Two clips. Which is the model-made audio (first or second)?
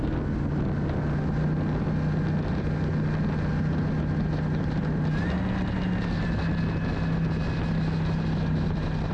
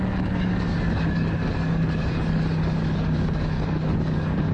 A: second